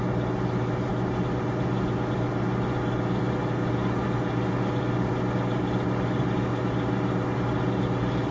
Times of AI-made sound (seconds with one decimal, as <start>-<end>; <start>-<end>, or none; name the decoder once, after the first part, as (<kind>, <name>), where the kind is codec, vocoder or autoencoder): none